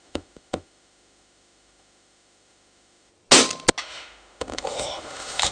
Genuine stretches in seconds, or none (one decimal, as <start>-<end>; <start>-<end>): 3.1-3.8